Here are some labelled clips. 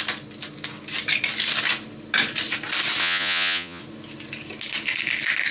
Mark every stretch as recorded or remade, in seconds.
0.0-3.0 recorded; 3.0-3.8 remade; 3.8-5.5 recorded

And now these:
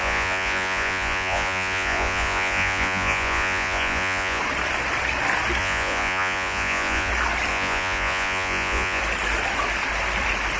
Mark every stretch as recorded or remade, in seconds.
0.0-4.4 remade; 4.4-5.6 recorded; 5.6-7.1 remade; 7.1-7.5 recorded; 7.5-9.0 remade; 9.0-10.6 recorded

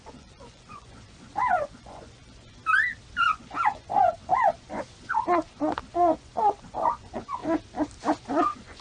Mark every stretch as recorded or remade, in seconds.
0.0-2.6 remade; 2.6-3.2 recorded; 3.2-7.4 remade; 7.4-8.2 recorded; 8.2-8.8 remade

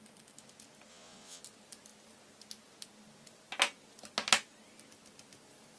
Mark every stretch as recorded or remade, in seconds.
0.0-0.9 recorded; 0.9-1.4 remade; 1.4-5.8 recorded

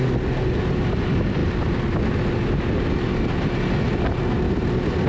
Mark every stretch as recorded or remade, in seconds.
0.0-5.1 recorded

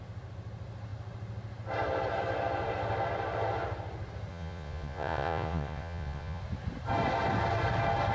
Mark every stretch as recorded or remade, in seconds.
0.0-4.3 recorded; 4.3-6.4 remade; 6.4-8.1 recorded

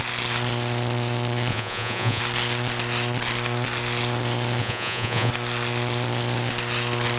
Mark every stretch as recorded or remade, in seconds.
0.0-1.5 recorded; 1.5-2.2 remade; 2.2-4.6 recorded; 4.6-5.3 remade; 5.3-7.2 recorded

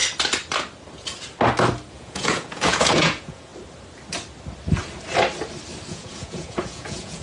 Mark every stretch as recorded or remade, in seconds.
0.0-1.9 recorded; 1.9-3.5 remade; 3.5-5.9 recorded; 5.9-7.2 remade